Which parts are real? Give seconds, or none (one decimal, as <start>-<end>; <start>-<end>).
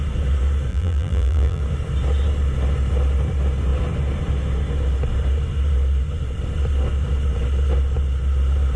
0.0-0.7; 1.6-8.8